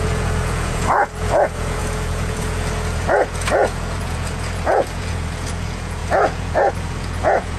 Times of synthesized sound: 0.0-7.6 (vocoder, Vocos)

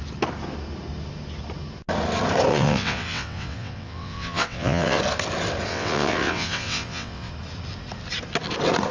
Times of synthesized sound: 2.5-5.0 (vocoder, WaveNeXt); 5.7-7.3

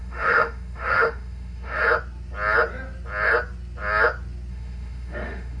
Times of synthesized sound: 0.0-1.8 (autoencoder, DAC-VAE); 4.5-5.6

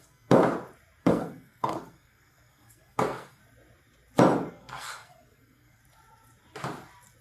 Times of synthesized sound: 0.0-0.4 (codec, SNAC); 1.0-3.4; 4.5-5.8

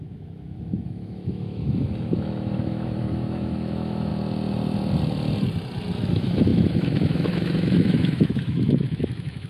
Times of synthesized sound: 0.0-4.1 (autoencoder, DAC-VAE); 6.1-9.5

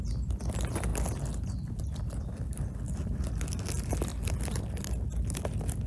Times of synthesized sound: none